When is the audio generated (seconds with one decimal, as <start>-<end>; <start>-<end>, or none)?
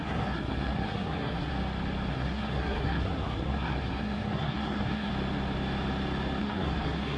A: 0.0-1.5; 2.1-5.1; 6.4-7.2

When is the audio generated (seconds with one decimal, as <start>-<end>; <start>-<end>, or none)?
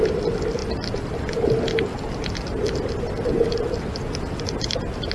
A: none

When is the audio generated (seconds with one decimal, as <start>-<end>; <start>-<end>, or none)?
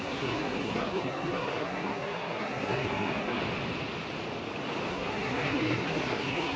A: 0.0-3.4; 4.9-6.6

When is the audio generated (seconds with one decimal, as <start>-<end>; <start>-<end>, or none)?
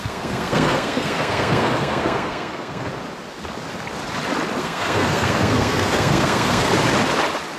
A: 0.0-2.9; 4.6-6.7